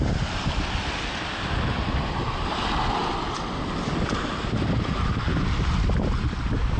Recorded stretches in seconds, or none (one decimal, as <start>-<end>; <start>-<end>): 0.0-6.8

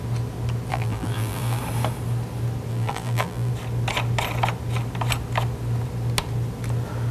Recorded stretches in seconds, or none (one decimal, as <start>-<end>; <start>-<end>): 0.0-0.7; 1.6-2.7; 3.5-7.1